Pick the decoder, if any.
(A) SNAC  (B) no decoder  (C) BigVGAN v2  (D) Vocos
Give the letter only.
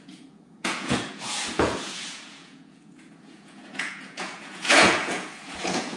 D